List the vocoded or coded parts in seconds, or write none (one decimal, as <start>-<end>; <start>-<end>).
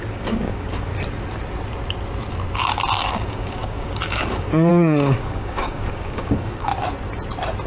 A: 0.0-0.9; 3.1-6.7